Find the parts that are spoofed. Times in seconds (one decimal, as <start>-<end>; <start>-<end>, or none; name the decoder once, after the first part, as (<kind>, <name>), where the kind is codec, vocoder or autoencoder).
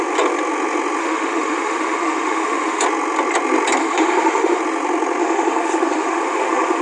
1.0-2.8 (autoencoder, DAC-VAE); 3.8-4.6; 5.2-6.8